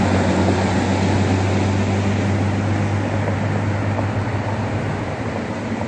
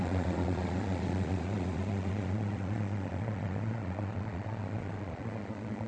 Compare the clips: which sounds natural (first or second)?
first